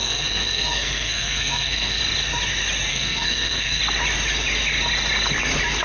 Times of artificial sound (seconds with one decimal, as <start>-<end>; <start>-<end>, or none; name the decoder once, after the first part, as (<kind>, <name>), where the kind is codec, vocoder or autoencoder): 0.0-2.0 (codec, SNAC); 2.9-3.8